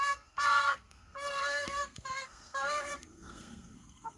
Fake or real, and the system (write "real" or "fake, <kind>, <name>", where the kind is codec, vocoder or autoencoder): fake, codec, SNAC